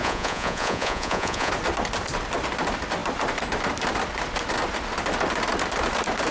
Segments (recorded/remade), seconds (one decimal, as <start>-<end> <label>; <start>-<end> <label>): 0.0-1.5 remade; 1.5-6.3 recorded